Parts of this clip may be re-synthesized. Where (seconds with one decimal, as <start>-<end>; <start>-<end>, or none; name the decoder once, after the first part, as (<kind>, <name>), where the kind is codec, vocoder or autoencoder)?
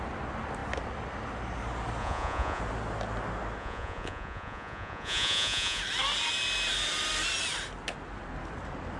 2.0-2.6 (vocoder, Vocos); 3.6-5.8